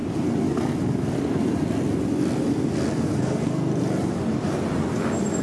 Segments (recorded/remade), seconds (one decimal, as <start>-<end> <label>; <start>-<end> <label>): 0.0-3.2 recorded; 3.2-3.7 remade; 3.7-5.4 recorded